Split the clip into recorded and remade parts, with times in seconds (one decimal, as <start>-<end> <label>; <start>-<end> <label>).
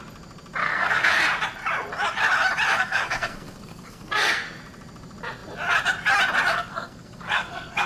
0.0-0.6 recorded; 0.6-1.2 remade; 1.2-2.7 recorded; 2.7-4.6 remade; 4.6-6.5 recorded; 6.5-7.9 remade